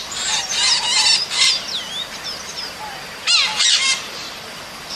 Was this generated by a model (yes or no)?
no